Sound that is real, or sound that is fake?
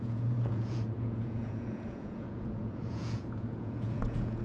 fake